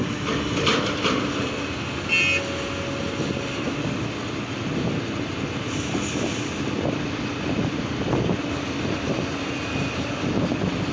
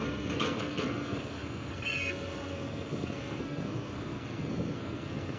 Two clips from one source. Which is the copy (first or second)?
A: second